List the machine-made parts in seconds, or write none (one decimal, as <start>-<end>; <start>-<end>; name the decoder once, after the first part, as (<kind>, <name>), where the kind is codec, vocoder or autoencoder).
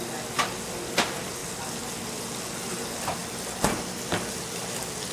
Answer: none